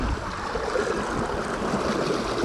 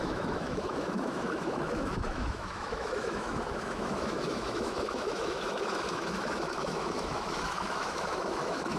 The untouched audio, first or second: first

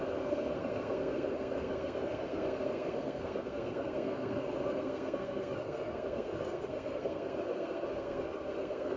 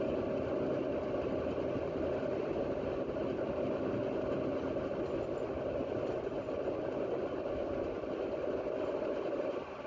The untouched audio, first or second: second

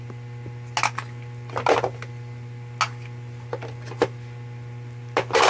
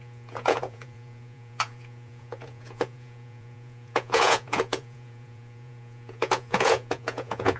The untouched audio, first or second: first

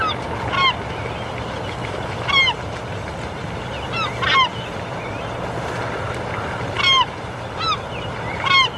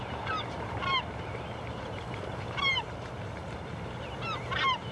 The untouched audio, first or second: first